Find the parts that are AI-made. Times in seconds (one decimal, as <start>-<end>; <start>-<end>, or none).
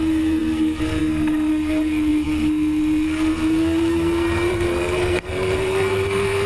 0.0-6.5